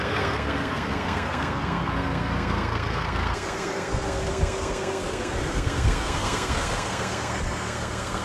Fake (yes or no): yes